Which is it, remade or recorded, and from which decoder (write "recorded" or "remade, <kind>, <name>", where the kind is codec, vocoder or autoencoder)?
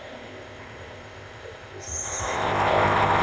remade, codec, ZipCodec